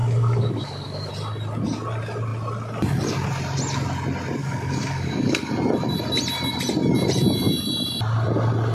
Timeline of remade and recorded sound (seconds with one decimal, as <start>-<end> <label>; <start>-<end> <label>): 0.0-1.1 remade; 1.1-4.4 recorded; 4.4-5.5 remade; 5.5-8.7 recorded

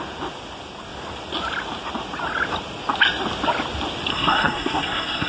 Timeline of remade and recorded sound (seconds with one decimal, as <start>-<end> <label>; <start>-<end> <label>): 0.0-4.1 recorded; 4.1-5.3 remade